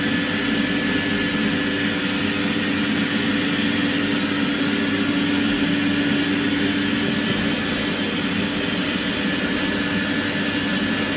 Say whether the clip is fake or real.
real